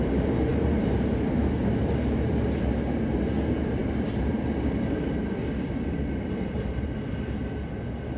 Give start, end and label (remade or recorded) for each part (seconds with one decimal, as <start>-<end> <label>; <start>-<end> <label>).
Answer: 0.0-8.2 recorded